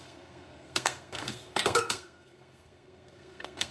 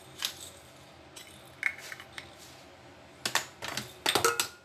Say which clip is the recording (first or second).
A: second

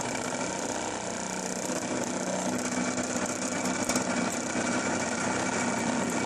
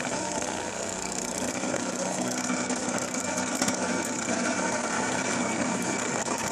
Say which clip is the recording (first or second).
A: first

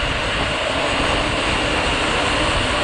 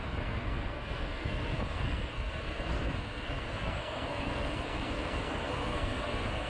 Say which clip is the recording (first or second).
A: first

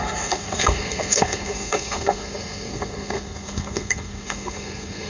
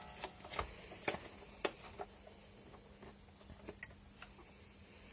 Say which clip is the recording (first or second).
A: second